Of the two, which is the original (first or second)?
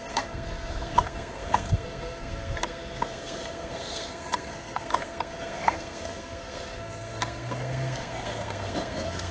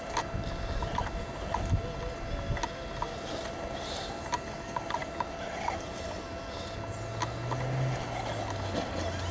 second